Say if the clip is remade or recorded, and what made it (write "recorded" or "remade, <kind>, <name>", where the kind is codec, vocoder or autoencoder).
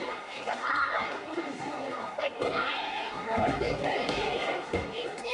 remade, codec, SNAC